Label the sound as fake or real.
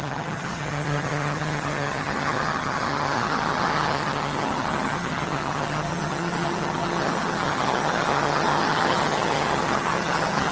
fake